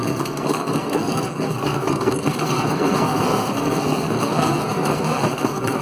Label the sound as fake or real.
fake